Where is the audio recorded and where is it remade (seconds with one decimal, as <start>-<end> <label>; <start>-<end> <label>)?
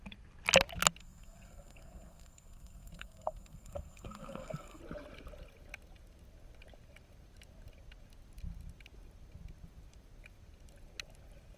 0.0-1.0 recorded; 1.0-4.8 remade; 4.8-11.6 recorded